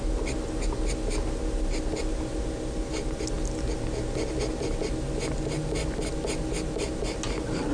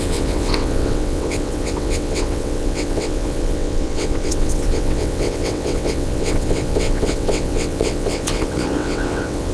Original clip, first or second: first